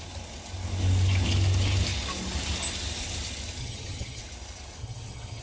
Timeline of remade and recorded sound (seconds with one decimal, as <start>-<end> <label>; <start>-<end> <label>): 0.0-3.6 recorded; 3.6-4.2 remade; 4.2-4.8 recorded; 4.8-5.4 remade

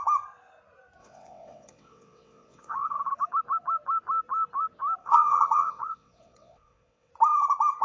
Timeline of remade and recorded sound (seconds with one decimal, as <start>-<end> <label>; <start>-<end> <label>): 0.0-1.0 recorded; 1.0-3.1 remade; 3.1-5.0 recorded; 5.0-7.1 remade; 7.1-7.8 recorded

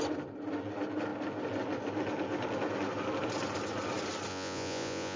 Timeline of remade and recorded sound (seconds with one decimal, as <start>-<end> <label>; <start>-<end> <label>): 0.0-4.3 recorded; 4.3-5.2 remade

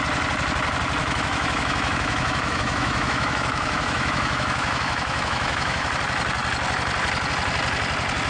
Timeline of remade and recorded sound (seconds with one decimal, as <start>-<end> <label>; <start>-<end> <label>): 0.0-1.0 recorded; 1.0-5.9 remade; 5.9-8.3 recorded

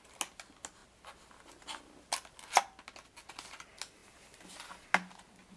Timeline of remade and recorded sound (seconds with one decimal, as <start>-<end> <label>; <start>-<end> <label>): 0.0-5.6 recorded

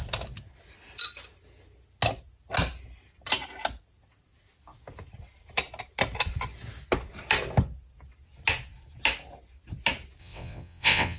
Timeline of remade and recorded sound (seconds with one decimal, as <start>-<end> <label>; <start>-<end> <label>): 0.0-10.2 recorded; 10.2-11.2 remade